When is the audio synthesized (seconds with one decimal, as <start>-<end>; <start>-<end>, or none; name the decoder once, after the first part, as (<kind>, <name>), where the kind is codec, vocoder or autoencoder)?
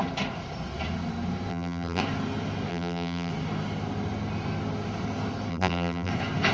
1.5-2.0 (vocoder, BigVGAN v2); 2.7-3.3; 5.5-6.1